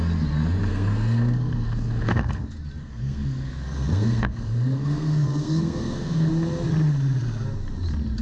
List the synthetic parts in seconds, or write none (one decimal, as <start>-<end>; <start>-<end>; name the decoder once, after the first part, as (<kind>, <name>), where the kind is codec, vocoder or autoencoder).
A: 0.7-2.4 (codec, SNAC); 2.8-6.3

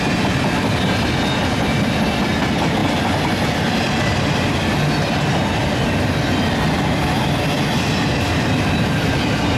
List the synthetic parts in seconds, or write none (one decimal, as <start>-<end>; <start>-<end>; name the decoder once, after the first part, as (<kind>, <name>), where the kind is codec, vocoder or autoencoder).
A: none

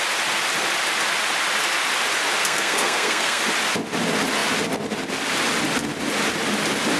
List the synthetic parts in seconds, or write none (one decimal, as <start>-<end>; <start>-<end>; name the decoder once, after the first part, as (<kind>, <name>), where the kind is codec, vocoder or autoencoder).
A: 2.4-3.4 (codec, SNAC)

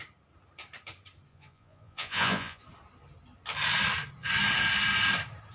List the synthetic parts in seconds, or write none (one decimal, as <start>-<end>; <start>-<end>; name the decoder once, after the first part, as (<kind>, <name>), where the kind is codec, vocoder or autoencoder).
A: 1.3-2.6 (vocoder, Vocos)

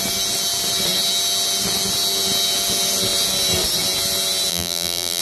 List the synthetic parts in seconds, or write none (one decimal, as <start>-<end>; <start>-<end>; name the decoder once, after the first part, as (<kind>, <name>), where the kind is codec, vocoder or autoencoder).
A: 4.5-5.2 (vocoder, BigVGAN v2)

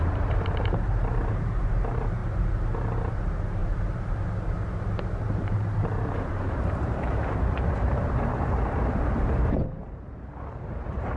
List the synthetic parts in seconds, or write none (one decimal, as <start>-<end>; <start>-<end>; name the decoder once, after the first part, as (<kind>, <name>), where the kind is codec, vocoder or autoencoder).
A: 0.0-2.2 (vocoder, BigVGAN v2); 3.1-3.6; 5.2-11.2

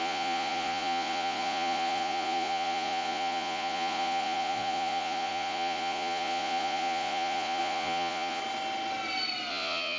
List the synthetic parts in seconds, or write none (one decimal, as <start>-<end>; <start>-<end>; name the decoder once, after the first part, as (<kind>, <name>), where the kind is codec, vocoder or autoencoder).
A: 0.0-8.4 (vocoder, Vocos); 9.5-10.0